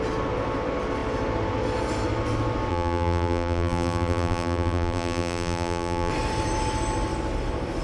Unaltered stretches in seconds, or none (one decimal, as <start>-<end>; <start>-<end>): 0.0-2.7; 6.1-7.8